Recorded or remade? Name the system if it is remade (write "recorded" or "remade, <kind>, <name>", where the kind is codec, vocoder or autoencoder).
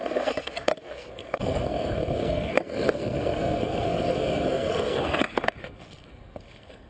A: remade, codec, SNAC